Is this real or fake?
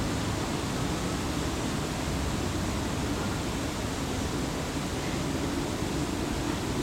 real